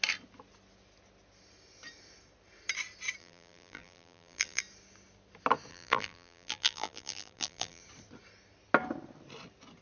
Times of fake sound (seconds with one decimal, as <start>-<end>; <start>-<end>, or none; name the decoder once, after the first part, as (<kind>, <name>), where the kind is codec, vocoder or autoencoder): 3.2-4.6 (vocoder, BigVGAN v2); 5.7-7.8